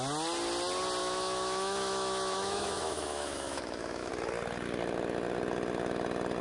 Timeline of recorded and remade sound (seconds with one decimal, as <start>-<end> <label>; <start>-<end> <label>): 0.0-1.0 recorded; 1.0-4.1 remade; 4.1-6.4 recorded